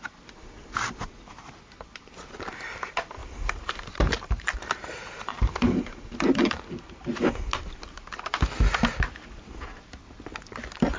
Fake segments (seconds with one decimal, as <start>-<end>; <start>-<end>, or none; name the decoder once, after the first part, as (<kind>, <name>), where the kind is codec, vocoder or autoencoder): 3.2-6.6 (vocoder, BigVGAN v2)